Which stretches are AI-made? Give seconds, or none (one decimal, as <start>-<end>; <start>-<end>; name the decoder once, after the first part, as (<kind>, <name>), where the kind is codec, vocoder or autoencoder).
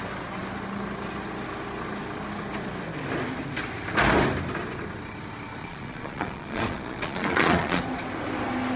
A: 5.6-7.8 (vocoder, Vocos)